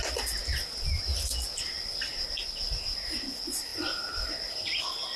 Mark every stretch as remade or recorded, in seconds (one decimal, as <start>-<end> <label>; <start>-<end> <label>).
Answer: 0.0-3.7 recorded; 3.7-4.3 remade; 4.3-5.2 recorded

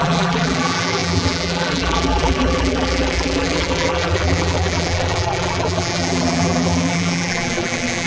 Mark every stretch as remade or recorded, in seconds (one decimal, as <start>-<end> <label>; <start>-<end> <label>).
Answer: 0.0-8.1 remade